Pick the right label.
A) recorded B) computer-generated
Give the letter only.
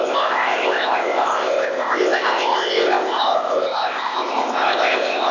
B